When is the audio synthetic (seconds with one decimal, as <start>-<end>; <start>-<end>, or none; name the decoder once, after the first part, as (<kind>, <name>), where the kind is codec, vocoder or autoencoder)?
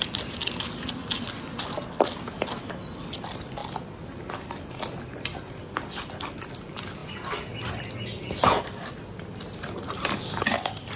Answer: none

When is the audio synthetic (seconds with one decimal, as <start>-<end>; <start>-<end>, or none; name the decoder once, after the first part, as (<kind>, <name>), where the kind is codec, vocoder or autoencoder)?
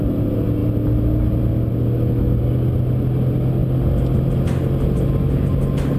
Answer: none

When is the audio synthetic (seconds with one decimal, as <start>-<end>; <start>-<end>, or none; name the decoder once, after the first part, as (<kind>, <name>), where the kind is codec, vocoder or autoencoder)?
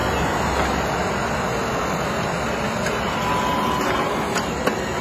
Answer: none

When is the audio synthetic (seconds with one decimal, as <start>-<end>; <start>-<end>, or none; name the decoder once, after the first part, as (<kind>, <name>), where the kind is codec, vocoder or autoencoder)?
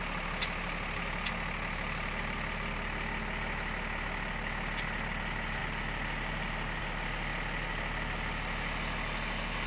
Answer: none